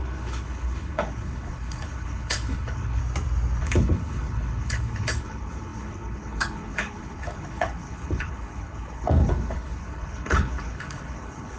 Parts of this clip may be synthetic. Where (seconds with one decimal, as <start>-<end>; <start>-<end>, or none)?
0.0-3.0; 3.6-11.6

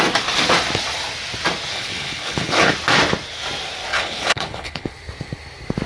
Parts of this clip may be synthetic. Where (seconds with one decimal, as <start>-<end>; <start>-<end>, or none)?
1.7-2.7; 3.9-4.9

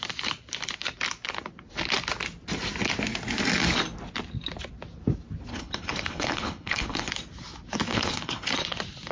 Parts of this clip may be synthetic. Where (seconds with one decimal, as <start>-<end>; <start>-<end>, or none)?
5.5-7.1; 7.9-8.5

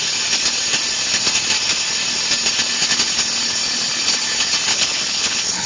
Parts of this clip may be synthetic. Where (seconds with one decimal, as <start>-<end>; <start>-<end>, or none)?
4.7-5.7

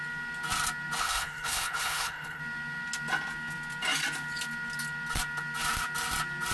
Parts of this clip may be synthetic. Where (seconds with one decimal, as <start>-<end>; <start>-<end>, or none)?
1.0-2.4